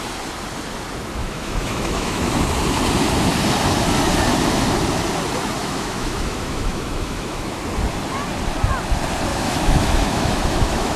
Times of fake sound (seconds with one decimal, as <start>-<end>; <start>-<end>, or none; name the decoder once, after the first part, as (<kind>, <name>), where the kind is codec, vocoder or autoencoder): 1.2-2.3 (autoencoder, DAC-VAE); 5.6-7.6; 9.3-11.0